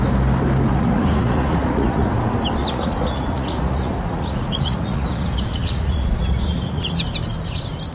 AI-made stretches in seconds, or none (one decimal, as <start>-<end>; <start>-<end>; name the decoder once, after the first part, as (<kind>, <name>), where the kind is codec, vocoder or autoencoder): 0.7-2.2 (vocoder, Vocos); 2.6-7.0